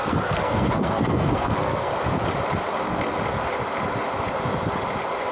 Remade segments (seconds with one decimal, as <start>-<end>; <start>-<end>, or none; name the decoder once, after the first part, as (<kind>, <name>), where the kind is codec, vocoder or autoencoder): 0.0-1.9 (codec, SNAC)